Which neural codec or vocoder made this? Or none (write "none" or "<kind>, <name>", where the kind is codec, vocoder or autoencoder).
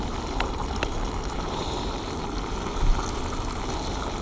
none